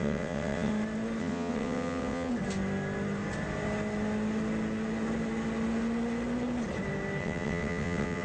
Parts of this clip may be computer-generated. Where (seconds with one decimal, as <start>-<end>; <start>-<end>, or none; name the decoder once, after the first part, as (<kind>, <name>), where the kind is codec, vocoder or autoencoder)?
0.0-0.7 (vocoder, WaveNeXt); 1.2-2.3; 7.2-8.2

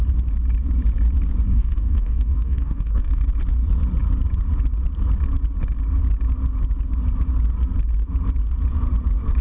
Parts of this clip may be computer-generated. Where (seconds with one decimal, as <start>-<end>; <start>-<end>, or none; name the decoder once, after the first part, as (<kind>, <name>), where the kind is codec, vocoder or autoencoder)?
1.5-3.2 (codec, DAC)

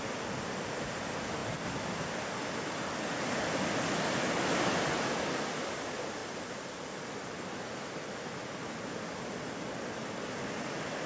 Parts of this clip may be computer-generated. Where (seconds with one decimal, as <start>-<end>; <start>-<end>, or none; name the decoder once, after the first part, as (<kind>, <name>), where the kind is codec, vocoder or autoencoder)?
none